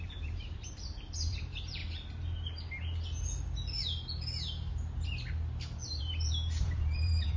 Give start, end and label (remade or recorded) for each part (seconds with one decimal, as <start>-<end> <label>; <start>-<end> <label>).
0.0-1.8 remade; 1.8-6.0 recorded; 6.0-7.4 remade

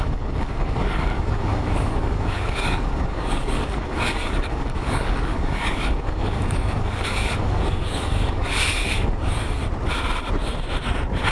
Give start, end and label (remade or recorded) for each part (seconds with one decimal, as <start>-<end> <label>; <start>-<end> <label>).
0.0-9.6 remade; 9.6-11.3 recorded

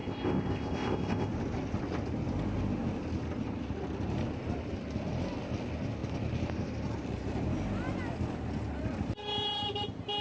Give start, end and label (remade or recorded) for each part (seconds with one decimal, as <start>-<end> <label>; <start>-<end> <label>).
0.0-1.3 remade; 1.3-10.2 recorded

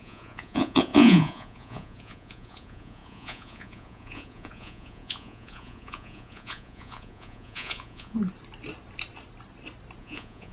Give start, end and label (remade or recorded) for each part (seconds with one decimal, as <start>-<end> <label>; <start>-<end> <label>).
0.0-8.2 remade; 8.2-10.0 recorded; 10.0-10.5 remade

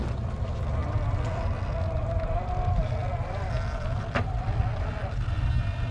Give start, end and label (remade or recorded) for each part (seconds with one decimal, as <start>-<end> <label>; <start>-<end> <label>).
0.0-5.9 recorded

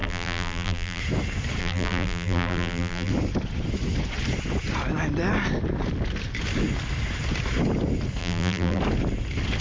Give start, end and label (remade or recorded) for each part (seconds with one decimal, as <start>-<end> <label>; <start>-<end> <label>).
0.0-1.0 remade; 1.0-1.6 recorded; 1.6-3.1 remade; 3.1-8.2 recorded; 8.2-8.8 remade; 8.8-9.6 recorded

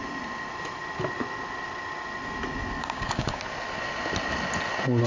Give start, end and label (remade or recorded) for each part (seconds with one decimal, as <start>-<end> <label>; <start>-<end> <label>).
0.0-2.8 recorded; 2.8-3.4 remade; 3.4-5.1 recorded

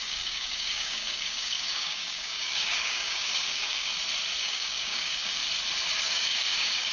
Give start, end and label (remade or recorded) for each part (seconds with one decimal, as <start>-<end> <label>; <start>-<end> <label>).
0.0-3.9 remade; 3.9-4.4 recorded; 4.4-5.4 remade; 5.4-6.0 recorded; 6.0-6.9 remade